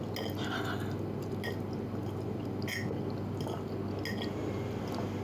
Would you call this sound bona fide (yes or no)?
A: yes